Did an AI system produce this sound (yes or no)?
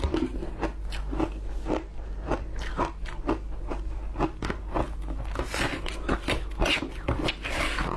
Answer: no